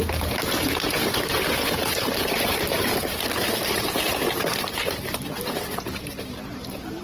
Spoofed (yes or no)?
yes